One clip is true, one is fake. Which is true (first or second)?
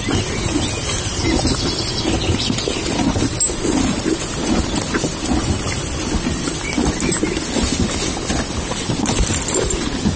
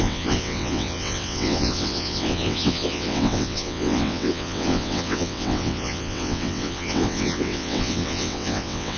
first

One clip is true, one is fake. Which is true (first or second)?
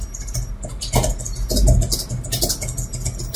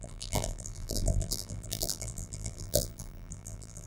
first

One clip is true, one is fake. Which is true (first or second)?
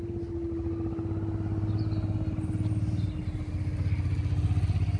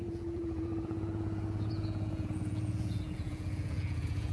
first